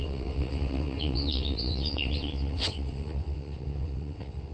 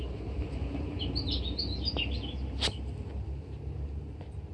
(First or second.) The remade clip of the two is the first